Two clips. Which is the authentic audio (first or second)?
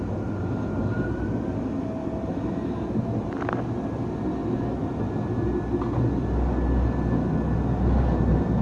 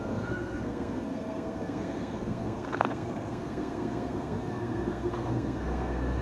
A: first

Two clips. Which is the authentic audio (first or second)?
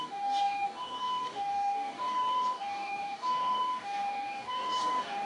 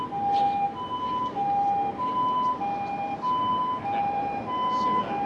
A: second